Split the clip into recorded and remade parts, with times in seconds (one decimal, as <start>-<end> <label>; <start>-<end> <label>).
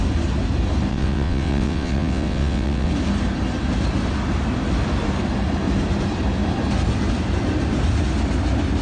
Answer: 0.0-0.9 recorded; 0.9-2.9 remade; 2.9-8.8 recorded